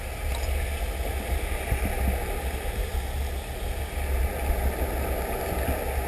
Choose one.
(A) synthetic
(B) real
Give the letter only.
B